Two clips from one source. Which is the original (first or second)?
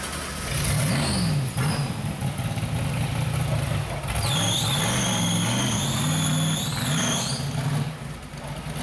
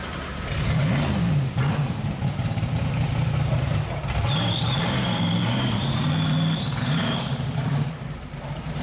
first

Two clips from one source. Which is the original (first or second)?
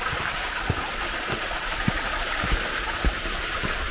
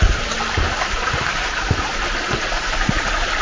second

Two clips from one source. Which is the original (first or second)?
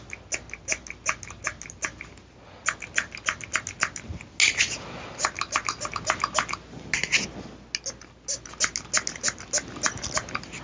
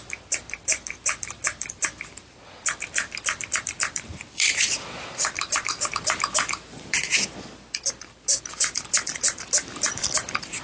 first